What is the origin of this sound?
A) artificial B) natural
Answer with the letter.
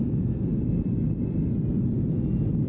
B